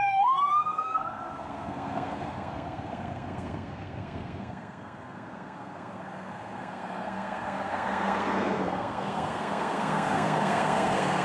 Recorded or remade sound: remade